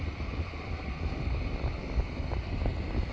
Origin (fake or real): real